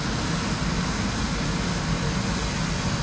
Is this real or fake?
real